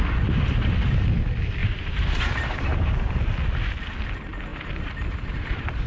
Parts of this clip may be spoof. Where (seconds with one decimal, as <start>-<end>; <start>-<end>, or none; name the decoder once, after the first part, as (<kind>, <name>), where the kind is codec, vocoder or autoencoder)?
1.6-3.3 (vocoder, BigVGAN v2); 4.5-5.9